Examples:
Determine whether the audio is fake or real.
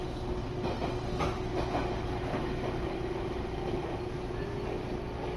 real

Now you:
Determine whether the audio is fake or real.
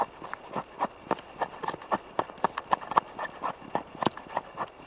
real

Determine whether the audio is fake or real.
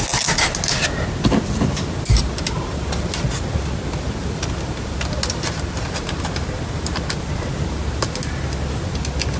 real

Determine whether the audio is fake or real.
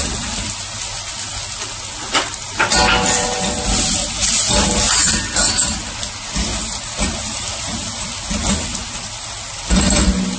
real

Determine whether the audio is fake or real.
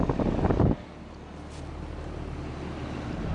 real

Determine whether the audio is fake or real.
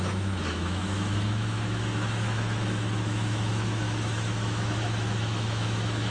fake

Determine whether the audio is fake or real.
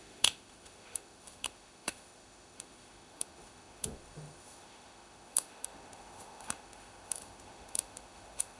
fake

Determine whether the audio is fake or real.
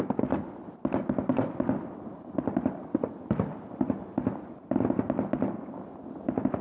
real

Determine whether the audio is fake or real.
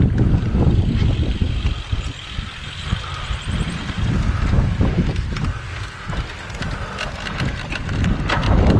real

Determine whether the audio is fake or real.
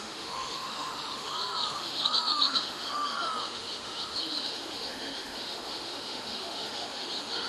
fake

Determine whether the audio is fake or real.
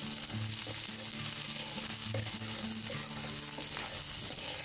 real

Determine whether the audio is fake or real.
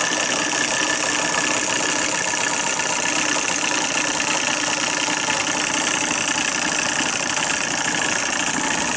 real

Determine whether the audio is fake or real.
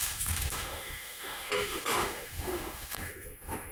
fake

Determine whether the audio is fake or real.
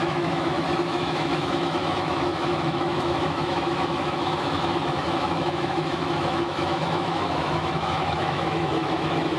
fake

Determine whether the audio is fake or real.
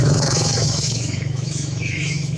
fake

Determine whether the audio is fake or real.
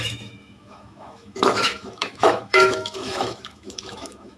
fake